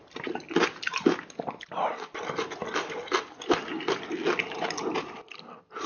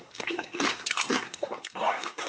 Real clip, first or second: first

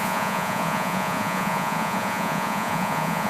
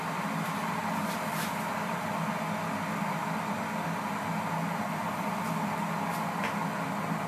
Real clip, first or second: second